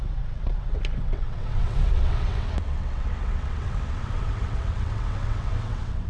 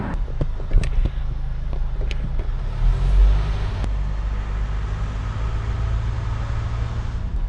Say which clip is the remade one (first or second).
first